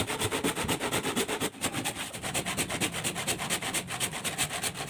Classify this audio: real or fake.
real